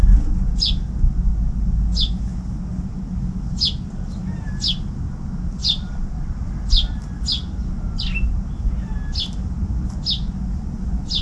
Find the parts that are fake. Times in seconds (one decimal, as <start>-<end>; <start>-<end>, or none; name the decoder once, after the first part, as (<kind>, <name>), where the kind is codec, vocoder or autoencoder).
5.6-7.1 (vocoder, BigVGAN v2)